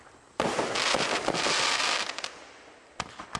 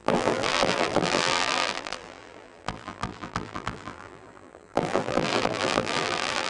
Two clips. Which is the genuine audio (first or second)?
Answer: first